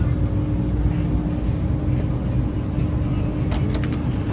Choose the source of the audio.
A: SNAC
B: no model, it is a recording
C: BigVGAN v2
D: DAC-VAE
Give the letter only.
B